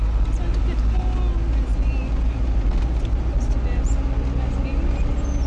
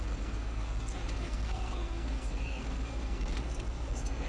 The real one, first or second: first